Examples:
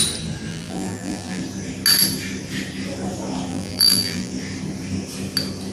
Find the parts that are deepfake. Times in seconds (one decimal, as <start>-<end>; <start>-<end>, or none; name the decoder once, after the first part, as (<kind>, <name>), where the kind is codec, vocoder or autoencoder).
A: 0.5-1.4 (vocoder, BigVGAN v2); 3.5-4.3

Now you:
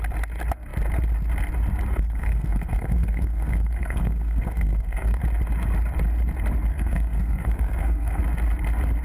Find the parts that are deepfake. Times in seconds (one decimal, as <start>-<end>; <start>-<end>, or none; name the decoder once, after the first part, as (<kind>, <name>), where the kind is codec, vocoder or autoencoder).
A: 1.9-5.2 (codec, SNAC); 6.7-8.2

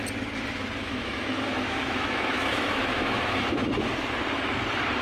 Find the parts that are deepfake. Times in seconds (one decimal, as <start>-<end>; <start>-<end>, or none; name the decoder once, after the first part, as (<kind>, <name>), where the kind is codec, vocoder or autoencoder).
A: 0.8-3.8 (autoencoder, DAC-VAE)

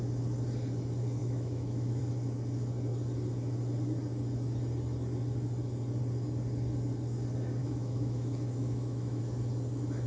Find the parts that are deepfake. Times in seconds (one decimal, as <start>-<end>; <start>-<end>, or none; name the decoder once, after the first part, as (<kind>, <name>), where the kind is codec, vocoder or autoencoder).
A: 1.2-2.0 (autoencoder, DAC-VAE); 7.6-9.2